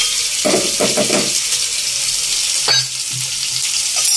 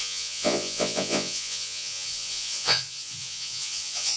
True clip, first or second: first